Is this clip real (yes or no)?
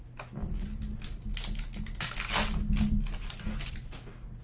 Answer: yes